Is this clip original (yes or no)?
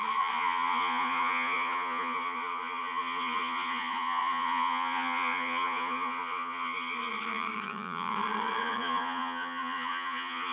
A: no